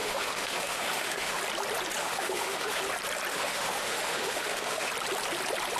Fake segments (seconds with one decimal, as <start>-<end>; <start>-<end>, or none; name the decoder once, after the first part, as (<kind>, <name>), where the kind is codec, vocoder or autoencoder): 0.0-1.4 (autoencoder, DAC-VAE); 2.0-2.8; 3.3-4.9